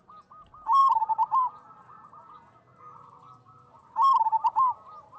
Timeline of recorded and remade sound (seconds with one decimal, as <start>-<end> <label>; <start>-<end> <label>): 0.0-0.8 recorded; 0.8-2.8 remade; 2.8-5.2 recorded

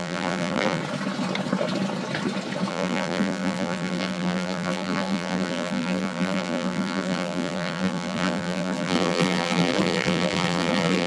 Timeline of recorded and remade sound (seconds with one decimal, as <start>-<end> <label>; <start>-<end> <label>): 0.0-0.8 remade; 0.8-2.7 recorded; 2.7-11.1 remade

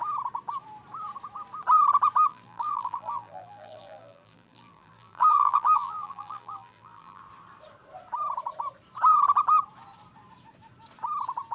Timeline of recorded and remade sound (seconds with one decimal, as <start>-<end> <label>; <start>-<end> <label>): 0.0-2.3 recorded; 2.3-7.2 remade; 7.2-11.5 recorded

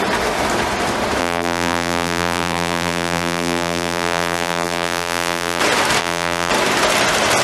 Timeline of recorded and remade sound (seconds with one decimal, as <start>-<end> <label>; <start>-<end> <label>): 0.0-1.2 recorded; 1.2-5.6 remade; 5.6-6.0 recorded; 6.0-6.5 remade; 6.5-7.4 recorded

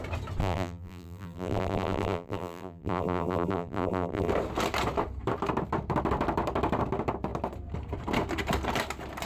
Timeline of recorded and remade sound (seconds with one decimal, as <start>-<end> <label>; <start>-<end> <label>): 0.0-0.4 recorded; 0.4-4.3 remade; 4.3-9.3 recorded